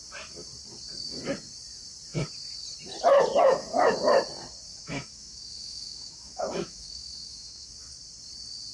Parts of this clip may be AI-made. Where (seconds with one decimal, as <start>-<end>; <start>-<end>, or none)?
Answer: 4.7-7.7